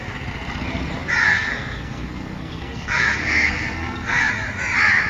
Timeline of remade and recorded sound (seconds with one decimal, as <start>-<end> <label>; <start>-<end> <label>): 0.0-1.2 recorded; 1.2-4.3 remade; 4.3-5.1 recorded